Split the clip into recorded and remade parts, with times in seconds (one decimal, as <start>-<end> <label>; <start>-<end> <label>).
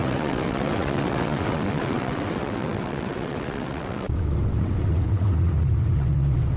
0.0-6.6 remade